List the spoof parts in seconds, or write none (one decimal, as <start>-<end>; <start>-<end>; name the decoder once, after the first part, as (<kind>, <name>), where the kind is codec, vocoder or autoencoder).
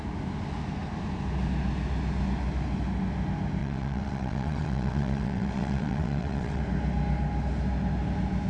3.6-6.6 (vocoder, WaveNeXt)